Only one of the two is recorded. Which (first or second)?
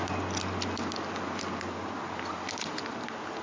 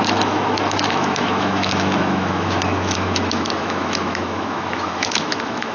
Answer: first